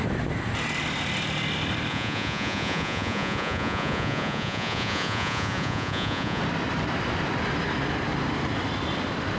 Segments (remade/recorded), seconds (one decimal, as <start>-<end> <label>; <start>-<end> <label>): 0.0-1.9 recorded; 1.9-6.4 remade; 6.4-9.4 recorded